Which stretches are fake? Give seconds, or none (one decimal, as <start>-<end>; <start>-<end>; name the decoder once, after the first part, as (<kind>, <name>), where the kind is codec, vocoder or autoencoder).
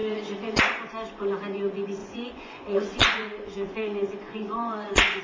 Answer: 0.0-0.6 (vocoder, Vocos); 2.0-5.2